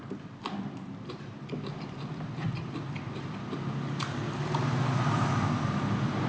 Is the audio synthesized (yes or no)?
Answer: no